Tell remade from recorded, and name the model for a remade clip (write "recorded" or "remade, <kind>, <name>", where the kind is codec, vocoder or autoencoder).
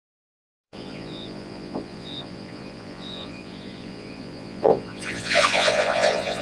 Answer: remade, vocoder, Vocos